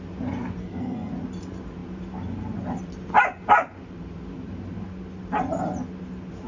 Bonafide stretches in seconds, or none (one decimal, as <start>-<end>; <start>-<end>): 0.0-0.6; 1.1-6.5